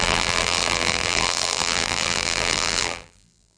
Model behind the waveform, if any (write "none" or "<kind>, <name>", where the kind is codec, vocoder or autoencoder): vocoder, BigVGAN v2